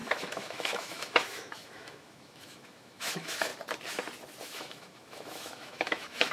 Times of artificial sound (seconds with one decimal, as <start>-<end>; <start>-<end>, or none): 0.0-3.5; 4.4-6.3